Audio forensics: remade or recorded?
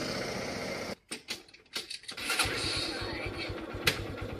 recorded